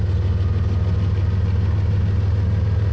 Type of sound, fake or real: real